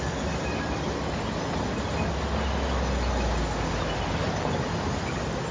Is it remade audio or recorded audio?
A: recorded